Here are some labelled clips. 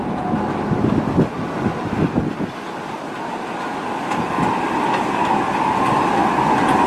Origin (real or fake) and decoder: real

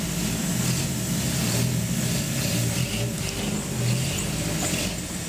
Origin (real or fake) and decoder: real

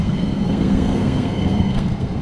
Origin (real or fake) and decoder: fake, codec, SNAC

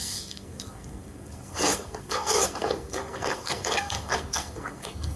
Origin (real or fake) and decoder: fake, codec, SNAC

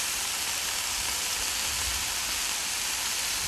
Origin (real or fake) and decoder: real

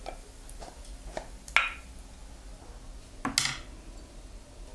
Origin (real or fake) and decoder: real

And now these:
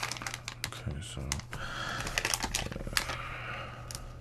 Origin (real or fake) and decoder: real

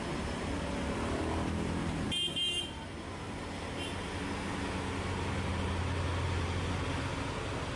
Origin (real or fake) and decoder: real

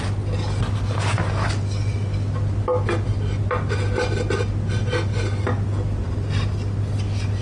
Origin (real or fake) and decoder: real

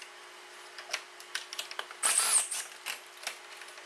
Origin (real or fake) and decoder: real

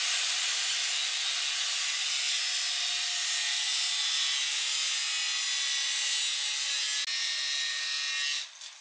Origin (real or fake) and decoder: real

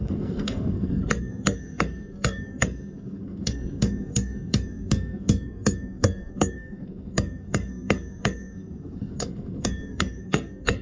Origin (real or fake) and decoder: fake, codec, SNAC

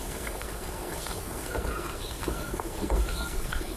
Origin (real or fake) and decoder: fake, codec, SNAC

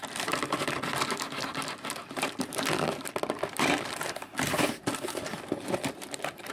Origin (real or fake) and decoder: real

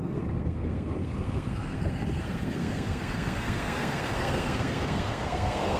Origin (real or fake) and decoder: fake, codec, SNAC